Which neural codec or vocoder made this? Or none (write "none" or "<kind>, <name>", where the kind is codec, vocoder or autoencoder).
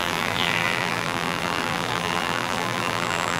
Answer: vocoder, BigVGAN v2